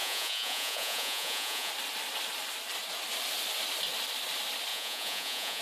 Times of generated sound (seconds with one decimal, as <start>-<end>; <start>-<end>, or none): 0.0-1.7; 4.7-5.6